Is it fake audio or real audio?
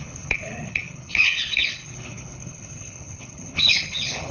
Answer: fake